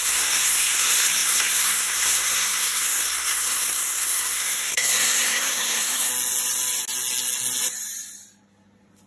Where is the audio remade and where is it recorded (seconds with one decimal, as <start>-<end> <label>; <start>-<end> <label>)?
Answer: 0.0-6.1 remade; 6.1-9.1 recorded